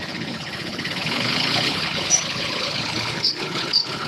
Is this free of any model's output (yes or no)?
no